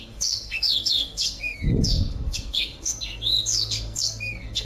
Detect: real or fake fake